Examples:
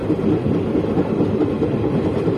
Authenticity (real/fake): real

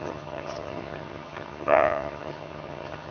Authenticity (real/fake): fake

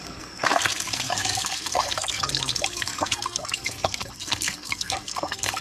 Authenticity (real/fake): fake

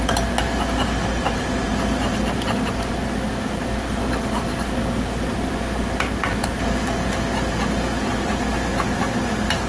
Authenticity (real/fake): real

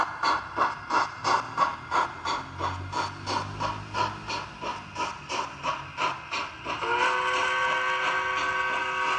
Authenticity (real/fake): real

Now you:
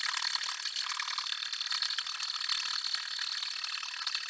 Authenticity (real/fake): real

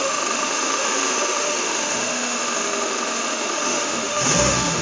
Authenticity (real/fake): fake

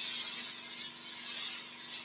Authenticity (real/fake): real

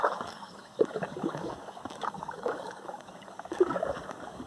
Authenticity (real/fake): fake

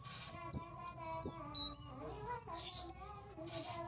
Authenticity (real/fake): real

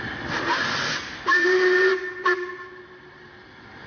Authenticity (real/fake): real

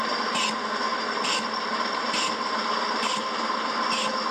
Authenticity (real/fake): real